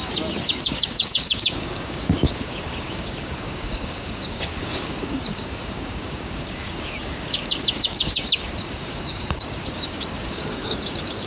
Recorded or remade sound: remade